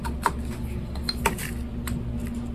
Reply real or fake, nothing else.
real